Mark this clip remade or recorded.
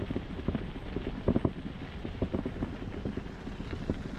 recorded